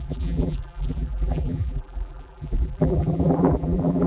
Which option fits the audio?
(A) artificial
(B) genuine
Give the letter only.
A